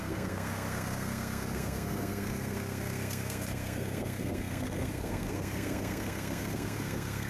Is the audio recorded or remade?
remade